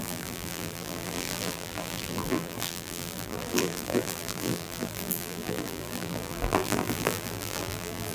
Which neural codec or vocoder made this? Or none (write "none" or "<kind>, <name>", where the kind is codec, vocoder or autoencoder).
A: vocoder, BigVGAN v2